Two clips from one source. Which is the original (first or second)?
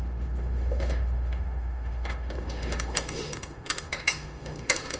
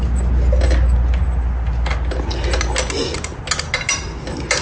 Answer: second